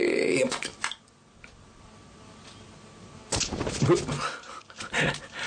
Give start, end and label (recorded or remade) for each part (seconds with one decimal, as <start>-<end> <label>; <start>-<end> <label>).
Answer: 0.0-5.5 recorded